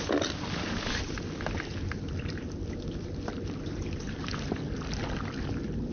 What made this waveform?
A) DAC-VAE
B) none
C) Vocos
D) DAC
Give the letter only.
B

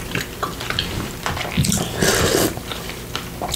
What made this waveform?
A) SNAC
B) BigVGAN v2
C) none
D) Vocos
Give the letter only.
B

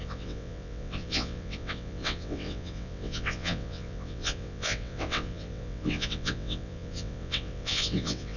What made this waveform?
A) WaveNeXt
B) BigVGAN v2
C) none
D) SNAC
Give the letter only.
A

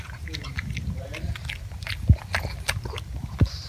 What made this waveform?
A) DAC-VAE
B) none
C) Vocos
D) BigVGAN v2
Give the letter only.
B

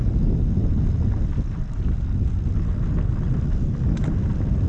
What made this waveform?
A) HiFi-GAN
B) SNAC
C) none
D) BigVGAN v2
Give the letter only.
C